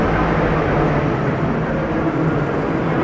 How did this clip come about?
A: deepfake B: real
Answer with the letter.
B